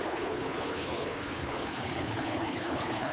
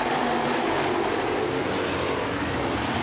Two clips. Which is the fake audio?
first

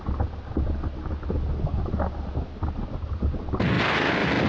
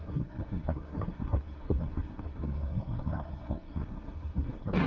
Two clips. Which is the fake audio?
second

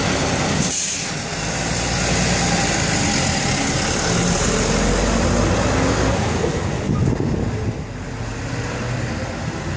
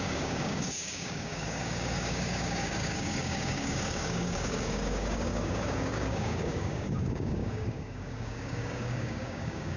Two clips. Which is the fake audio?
second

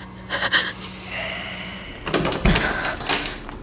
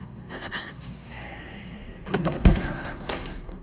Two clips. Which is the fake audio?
second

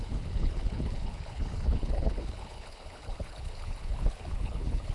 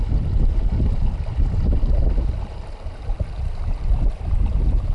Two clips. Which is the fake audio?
first